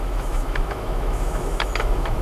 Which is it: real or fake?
fake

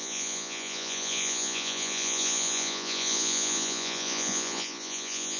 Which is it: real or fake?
fake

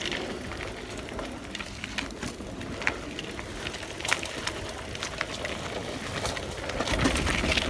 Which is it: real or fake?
real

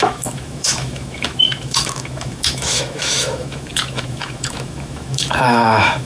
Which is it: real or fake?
fake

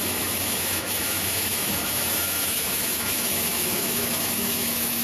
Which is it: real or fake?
fake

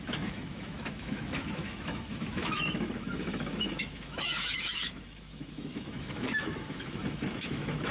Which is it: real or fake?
fake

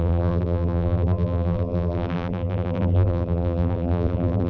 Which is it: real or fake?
fake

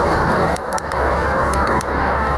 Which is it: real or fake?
fake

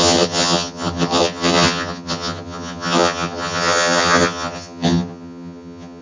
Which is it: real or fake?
fake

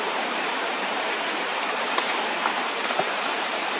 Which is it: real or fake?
fake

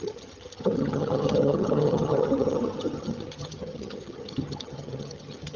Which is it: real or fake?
fake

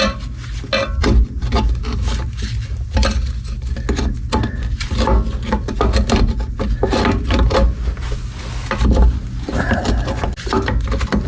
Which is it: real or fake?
real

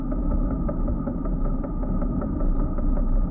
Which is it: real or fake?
real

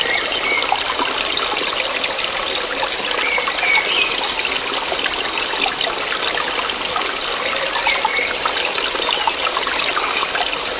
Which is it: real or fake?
real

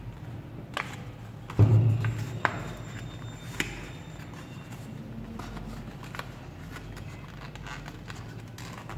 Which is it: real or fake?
real